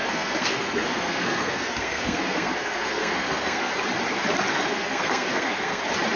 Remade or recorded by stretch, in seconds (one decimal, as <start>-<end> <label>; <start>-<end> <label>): 0.0-3.7 remade; 3.7-4.5 recorded; 4.5-5.8 remade; 5.8-6.2 recorded